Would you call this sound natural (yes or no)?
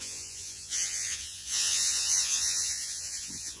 no